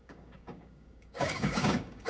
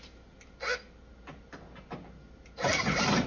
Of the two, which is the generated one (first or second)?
first